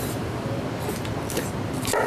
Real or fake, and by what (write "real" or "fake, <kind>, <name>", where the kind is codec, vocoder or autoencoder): fake, vocoder, BigVGAN v2